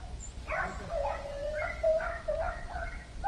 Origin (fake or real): fake